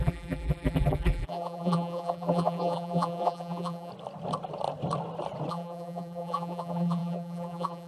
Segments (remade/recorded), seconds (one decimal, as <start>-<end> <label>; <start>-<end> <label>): 0.0-3.9 remade; 3.9-5.5 recorded; 5.5-7.9 remade